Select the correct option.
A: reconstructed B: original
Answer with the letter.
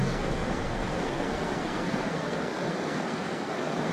A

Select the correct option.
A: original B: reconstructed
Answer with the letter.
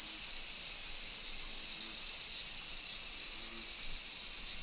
A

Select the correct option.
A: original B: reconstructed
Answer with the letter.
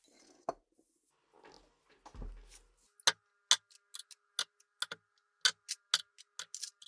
A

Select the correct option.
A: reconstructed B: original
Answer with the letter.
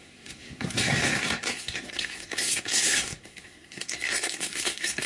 A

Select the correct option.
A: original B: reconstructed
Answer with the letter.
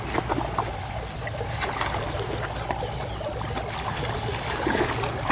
A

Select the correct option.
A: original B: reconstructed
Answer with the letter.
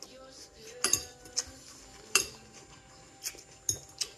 A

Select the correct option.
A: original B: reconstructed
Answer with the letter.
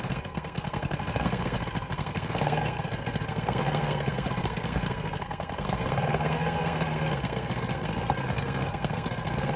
B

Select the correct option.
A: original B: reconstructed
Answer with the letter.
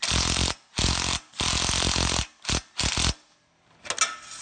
A